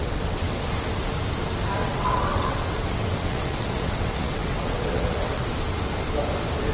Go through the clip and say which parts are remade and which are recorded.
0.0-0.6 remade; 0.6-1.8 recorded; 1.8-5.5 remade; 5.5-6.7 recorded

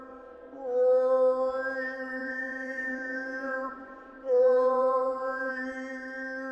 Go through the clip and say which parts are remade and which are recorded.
0.0-2.2 recorded; 2.2-5.5 remade; 5.5-6.5 recorded

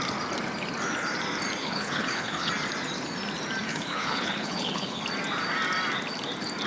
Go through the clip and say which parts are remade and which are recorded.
0.0-1.6 recorded; 1.6-2.5 remade; 2.5-3.7 recorded; 3.7-5.0 remade; 5.0-6.7 recorded

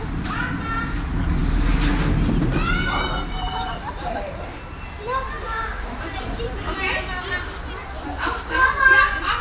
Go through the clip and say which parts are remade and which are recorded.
0.0-9.4 recorded